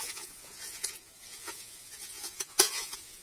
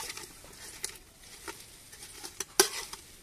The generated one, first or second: first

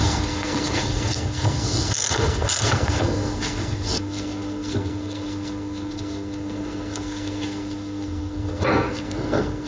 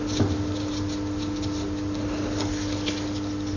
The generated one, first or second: first